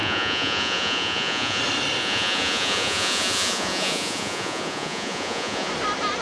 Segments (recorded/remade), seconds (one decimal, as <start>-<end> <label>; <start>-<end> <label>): 0.0-1.6 remade; 1.6-2.0 recorded; 2.0-5.7 remade; 5.7-6.2 recorded